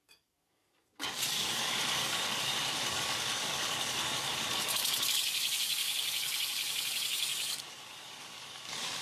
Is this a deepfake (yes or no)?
yes